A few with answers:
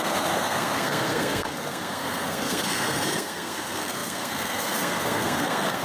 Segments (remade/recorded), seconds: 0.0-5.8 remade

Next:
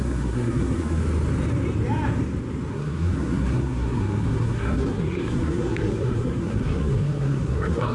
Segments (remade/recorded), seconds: 0.0-1.0 remade; 1.0-2.7 recorded; 2.7-7.9 remade

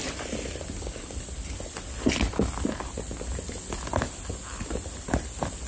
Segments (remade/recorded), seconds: 0.0-5.7 recorded

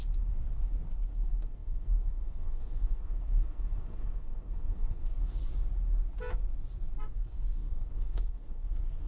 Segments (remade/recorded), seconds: 0.0-1.1 recorded; 1.1-5.4 remade; 5.4-7.1 recorded; 7.1-9.1 remade

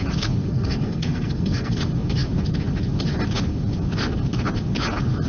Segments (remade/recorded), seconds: 0.0-0.4 recorded; 0.4-1.8 remade; 1.8-5.3 recorded